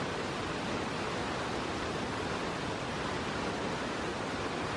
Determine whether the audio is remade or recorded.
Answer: recorded